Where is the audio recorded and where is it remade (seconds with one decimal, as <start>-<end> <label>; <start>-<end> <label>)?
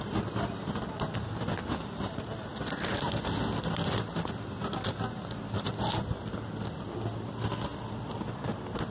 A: 0.0-8.9 recorded